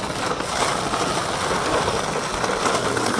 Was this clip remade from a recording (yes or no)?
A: no